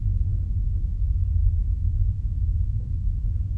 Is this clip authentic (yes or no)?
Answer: no